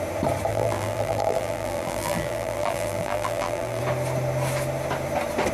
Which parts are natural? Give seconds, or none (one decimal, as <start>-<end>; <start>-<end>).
0.0-0.5; 3.8-5.5